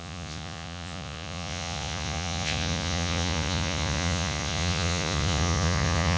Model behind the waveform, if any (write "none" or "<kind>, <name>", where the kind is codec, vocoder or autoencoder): vocoder, Vocos